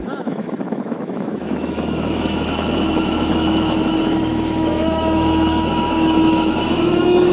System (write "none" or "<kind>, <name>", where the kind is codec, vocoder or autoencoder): autoencoder, DAC-VAE